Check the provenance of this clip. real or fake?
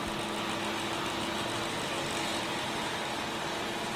real